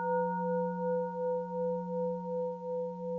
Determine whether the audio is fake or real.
real